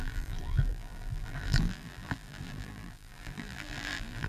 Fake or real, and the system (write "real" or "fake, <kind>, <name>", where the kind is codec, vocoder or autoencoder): fake, vocoder, BigVGAN v2